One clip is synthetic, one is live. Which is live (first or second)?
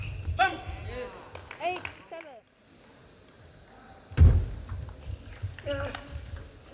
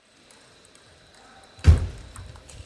first